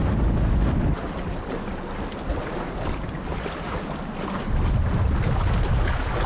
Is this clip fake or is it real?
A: real